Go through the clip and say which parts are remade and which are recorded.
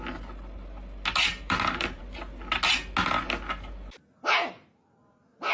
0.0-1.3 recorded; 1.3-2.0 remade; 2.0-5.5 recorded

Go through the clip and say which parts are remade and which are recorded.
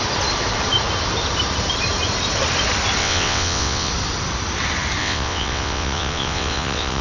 0.0-3.0 recorded; 3.0-3.9 remade; 3.9-5.0 recorded; 5.0-7.0 remade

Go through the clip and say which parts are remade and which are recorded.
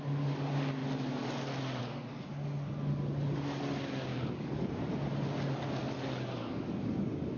0.0-4.1 recorded; 4.1-4.7 remade; 4.7-6.4 recorded; 6.4-7.4 remade